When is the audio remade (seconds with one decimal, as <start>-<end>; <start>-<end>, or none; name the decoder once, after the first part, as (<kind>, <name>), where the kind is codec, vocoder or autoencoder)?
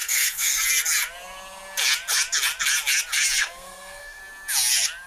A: 0.0-0.6 (codec, SNAC); 3.4-4.2